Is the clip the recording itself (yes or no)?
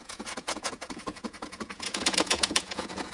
no